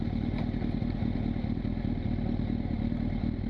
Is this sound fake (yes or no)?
no